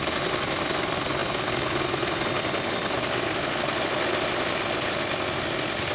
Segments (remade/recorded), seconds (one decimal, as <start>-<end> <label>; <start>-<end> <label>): 0.0-5.9 recorded